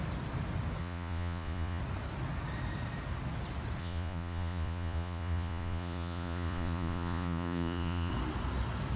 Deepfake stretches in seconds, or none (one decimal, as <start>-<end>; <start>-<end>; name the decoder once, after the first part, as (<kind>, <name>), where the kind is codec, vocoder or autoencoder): 0.8-1.8 (vocoder, Vocos); 3.8-8.1